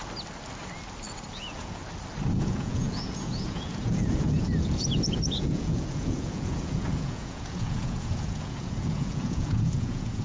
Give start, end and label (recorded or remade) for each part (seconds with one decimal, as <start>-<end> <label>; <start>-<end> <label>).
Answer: 0.0-1.3 recorded; 1.3-1.8 remade; 1.8-2.3 recorded; 2.3-10.2 remade